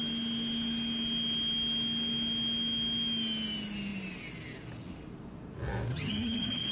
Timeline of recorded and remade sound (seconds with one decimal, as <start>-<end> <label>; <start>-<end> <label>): 0.0-5.9 recorded; 5.9-6.7 remade